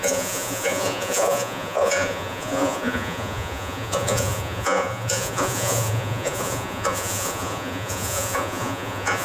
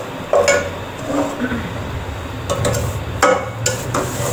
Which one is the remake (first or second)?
first